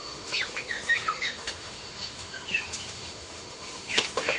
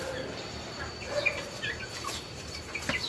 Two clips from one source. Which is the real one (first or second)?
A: second